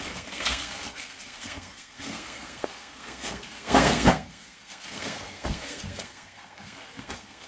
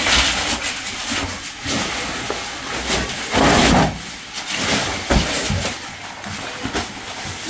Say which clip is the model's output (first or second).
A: first